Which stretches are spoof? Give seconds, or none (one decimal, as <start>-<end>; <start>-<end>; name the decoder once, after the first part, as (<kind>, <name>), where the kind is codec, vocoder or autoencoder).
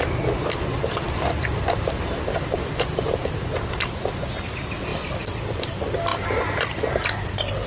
0.0-4.9 (vocoder, BigVGAN v2); 5.5-7.7